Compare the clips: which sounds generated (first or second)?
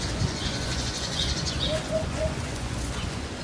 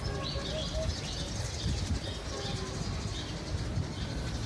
first